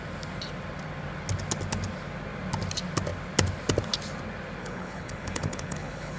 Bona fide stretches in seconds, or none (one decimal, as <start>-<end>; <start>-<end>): 0.0-4.6